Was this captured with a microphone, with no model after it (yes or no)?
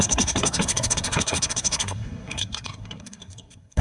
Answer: no